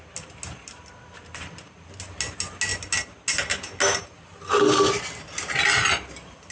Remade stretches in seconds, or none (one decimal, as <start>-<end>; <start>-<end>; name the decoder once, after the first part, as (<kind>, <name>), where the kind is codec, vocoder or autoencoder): none